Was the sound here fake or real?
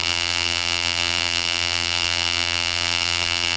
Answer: fake